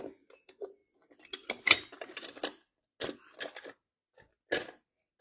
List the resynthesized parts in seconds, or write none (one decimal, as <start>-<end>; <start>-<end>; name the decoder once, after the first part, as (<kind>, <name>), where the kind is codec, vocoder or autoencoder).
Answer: none